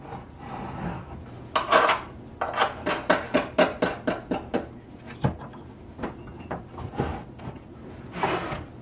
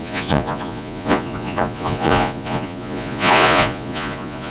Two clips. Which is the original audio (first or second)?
first